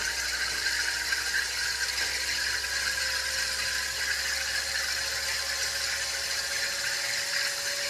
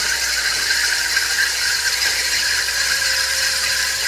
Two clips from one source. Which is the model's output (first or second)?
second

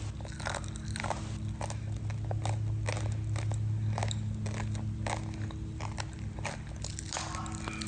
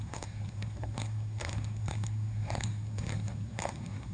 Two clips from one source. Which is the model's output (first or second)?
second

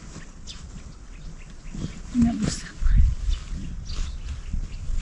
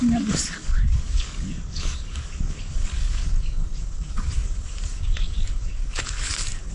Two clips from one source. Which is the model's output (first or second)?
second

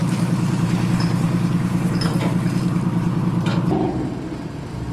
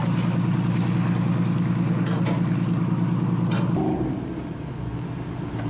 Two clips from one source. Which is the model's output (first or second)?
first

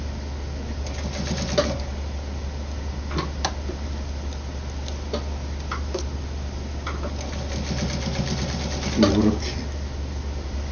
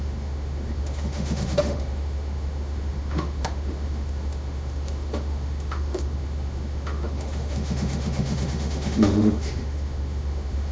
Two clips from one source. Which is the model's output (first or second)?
second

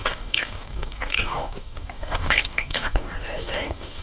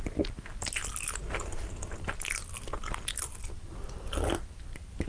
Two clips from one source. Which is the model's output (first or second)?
first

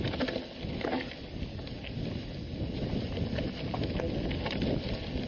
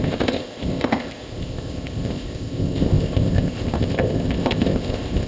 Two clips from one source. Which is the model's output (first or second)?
second